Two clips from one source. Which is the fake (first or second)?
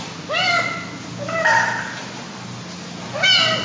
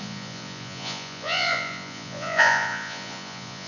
second